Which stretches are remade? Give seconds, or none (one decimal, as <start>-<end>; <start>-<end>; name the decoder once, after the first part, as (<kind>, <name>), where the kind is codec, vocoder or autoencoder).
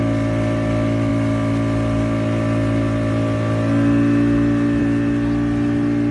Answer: none